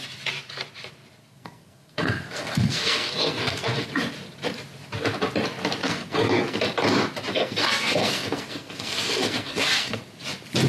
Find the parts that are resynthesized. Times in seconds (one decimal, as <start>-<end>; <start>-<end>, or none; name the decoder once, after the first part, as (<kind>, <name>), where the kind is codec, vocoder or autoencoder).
1.2-3.9 (codec, SNAC); 5.8-6.6; 7.3-10.0